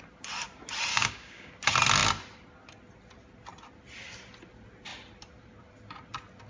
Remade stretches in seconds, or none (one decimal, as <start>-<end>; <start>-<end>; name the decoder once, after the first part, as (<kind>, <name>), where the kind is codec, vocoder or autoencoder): 0.9-1.5 (codec, DAC)